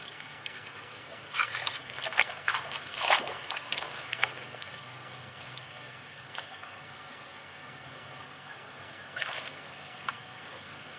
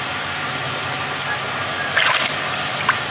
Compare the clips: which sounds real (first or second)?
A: second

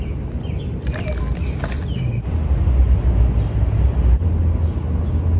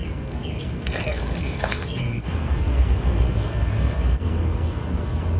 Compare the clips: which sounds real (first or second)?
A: first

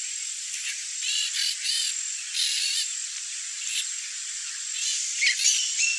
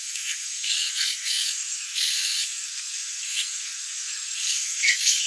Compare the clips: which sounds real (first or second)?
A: first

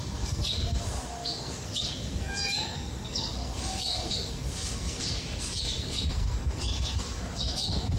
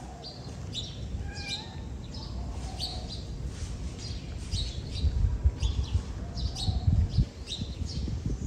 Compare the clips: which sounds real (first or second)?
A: second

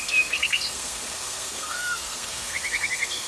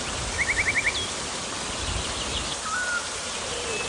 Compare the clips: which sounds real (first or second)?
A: second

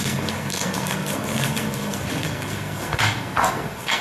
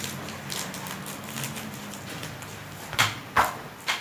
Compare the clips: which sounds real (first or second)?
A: second